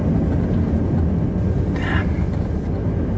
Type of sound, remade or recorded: recorded